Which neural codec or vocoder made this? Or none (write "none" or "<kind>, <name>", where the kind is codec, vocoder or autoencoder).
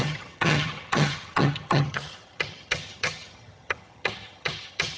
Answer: vocoder, HiFi-GAN